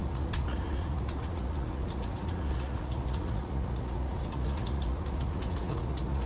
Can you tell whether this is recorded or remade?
remade